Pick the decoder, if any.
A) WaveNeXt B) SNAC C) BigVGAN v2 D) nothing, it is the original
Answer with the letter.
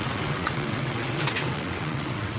A